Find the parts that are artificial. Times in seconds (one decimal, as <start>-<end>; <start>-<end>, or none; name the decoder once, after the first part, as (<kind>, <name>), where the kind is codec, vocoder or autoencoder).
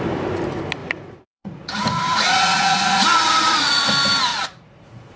0.8-3.9 (vocoder, Vocos); 4.3-5.2